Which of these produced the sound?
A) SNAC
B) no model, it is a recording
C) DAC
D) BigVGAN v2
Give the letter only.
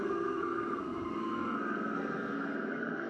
A